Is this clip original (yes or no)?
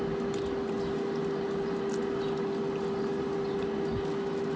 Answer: yes